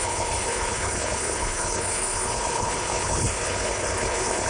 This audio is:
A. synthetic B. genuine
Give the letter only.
A